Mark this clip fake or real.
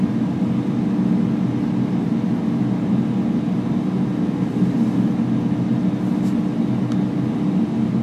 real